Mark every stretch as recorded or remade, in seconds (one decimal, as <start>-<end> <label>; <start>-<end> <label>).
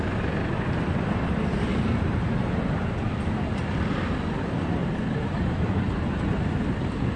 0.0-1.7 recorded; 1.7-2.3 remade; 2.3-4.8 recorded; 4.8-6.2 remade; 6.2-7.2 recorded